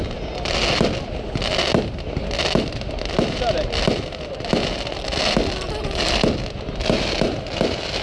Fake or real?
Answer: real